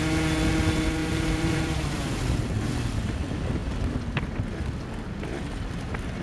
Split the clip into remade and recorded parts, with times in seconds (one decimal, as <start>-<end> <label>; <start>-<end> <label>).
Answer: 0.0-1.0 recorded; 1.0-2.0 remade; 2.0-6.2 recorded